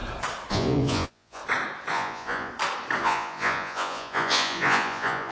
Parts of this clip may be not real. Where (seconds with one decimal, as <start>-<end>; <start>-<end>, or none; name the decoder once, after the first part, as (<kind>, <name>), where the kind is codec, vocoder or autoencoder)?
0.5-1.4 (vocoder, Vocos); 1.9-2.5; 3.0-5.3